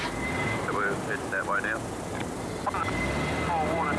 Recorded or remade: recorded